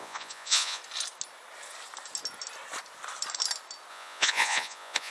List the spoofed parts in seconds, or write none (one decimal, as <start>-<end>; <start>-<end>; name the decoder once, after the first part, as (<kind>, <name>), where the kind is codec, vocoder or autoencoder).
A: 0.0-0.8 (vocoder, Vocos); 3.9-5.1